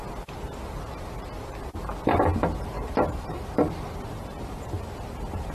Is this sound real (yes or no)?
yes